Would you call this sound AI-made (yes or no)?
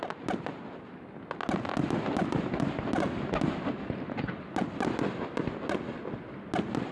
no